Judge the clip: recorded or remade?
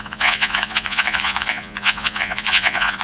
remade